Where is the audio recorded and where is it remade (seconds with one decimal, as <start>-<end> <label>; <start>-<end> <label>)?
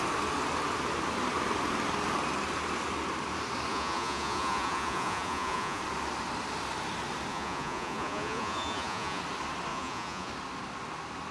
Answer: 0.0-3.7 recorded; 3.7-5.8 remade; 5.8-7.3 recorded; 7.3-9.2 remade; 9.2-9.7 recorded; 9.7-10.3 remade; 10.3-11.3 recorded